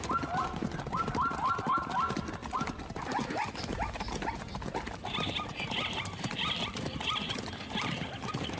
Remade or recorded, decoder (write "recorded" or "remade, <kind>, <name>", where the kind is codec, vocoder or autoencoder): recorded